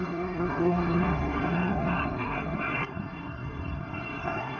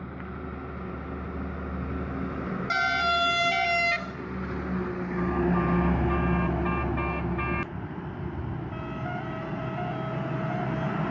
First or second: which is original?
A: second